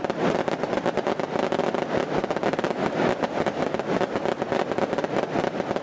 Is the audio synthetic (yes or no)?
no